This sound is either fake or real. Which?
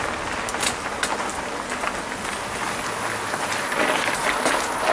real